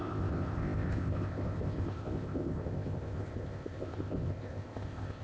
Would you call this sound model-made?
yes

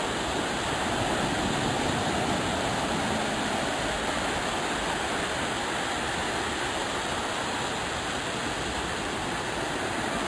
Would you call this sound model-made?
no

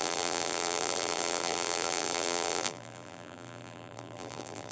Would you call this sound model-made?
yes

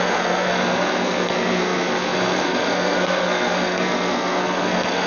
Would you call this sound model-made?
yes